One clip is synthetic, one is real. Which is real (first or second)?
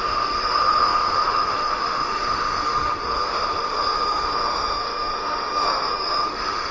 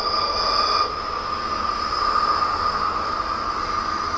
second